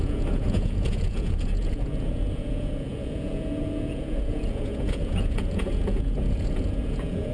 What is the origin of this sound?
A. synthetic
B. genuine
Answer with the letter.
A